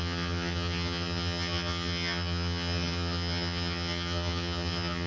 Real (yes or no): no